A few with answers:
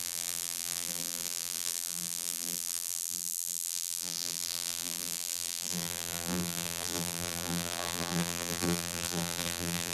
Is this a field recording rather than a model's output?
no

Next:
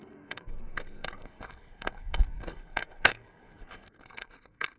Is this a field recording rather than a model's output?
no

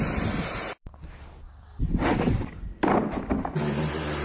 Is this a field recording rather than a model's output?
yes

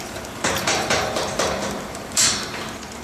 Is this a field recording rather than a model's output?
no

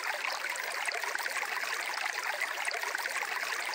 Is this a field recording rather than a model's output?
yes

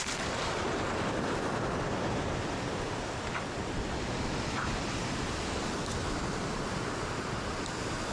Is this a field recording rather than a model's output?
yes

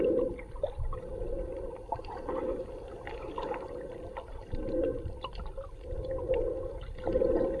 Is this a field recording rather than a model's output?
no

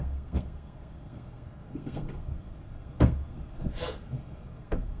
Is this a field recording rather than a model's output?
no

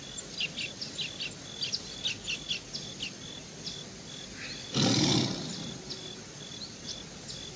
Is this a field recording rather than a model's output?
yes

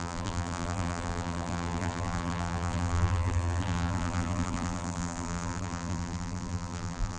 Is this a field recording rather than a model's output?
no